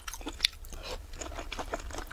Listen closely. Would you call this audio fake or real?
real